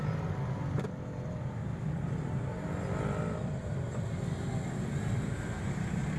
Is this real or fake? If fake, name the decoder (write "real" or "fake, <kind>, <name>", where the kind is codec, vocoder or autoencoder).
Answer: real